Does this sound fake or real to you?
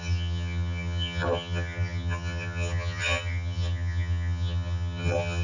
fake